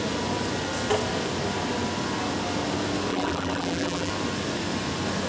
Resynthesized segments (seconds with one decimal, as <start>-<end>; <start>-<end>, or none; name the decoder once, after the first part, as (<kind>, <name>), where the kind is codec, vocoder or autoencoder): 3.1-4.1 (vocoder, BigVGAN v2)